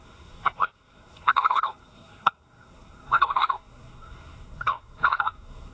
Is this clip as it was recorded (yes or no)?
no